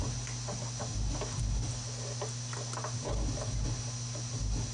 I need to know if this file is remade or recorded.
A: recorded